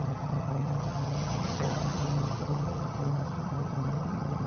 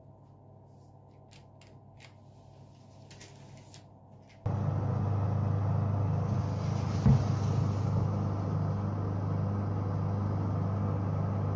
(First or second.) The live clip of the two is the second